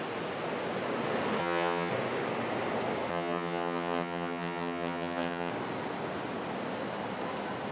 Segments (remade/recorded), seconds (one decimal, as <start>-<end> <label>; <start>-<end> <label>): 0.0-1.4 recorded; 1.4-1.9 remade; 1.9-3.1 recorded; 3.1-5.5 remade; 5.5-7.7 recorded